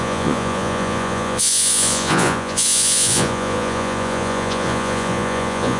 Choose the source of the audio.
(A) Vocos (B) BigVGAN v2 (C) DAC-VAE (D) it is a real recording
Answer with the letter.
A